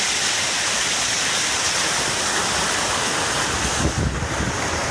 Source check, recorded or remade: recorded